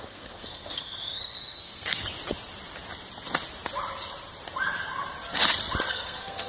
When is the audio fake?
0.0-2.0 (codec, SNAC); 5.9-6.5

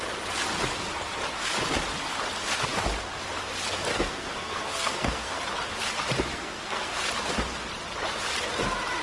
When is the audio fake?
3.9-5.4 (codec, SNAC); 6.3-7.1

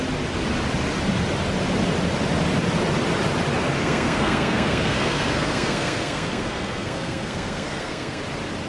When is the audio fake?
3.8-8.2 (codec, SNAC)

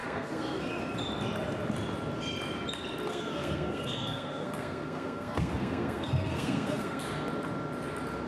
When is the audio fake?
0.0-0.8 (codec, SNAC); 3.1-7.0